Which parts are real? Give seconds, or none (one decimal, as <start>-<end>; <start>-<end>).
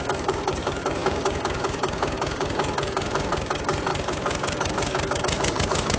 none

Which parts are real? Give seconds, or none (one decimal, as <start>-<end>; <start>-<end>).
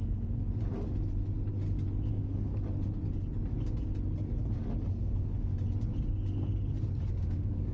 0.4-2.1; 2.5-4.9; 5.5-7.1